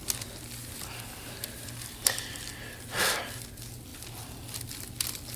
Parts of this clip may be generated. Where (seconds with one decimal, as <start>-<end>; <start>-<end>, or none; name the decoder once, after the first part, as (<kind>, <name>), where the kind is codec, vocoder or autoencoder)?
none